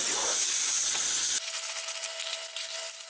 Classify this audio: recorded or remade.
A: recorded